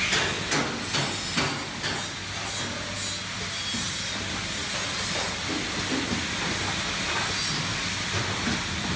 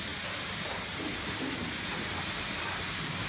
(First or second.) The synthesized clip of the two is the second